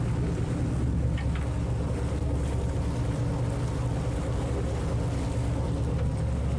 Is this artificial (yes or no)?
no